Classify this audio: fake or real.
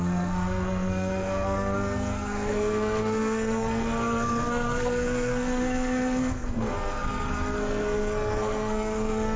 fake